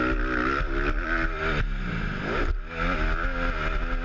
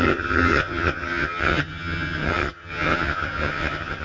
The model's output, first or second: second